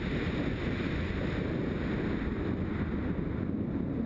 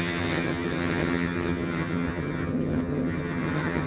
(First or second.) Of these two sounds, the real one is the first